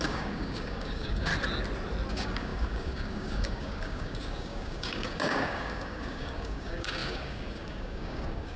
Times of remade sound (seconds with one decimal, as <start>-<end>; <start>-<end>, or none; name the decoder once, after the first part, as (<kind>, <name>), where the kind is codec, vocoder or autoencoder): 0.0-1.3 (codec, DAC); 2.1-8.6